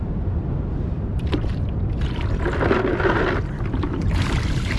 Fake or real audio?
real